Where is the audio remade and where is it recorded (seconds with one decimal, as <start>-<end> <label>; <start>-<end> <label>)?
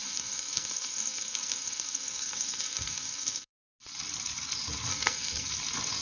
0.0-3.6 remade; 3.6-4.9 recorded; 4.9-5.5 remade; 5.5-6.0 recorded